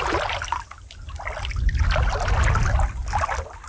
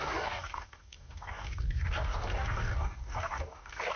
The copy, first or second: second